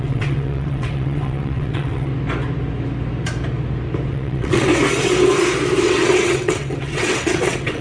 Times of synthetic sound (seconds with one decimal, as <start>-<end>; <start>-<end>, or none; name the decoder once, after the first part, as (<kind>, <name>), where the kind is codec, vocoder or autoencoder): 0.0-2.1 (vocoder, WaveNeXt); 4.1-4.7; 5.8-7.8